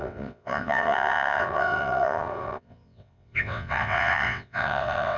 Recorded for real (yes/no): no